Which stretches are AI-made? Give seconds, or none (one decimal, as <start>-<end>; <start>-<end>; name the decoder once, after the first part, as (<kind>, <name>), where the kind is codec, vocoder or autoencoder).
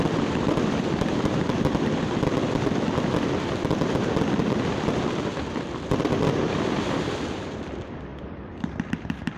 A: 0.0-8.1 (vocoder, BigVGAN v2); 8.9-9.4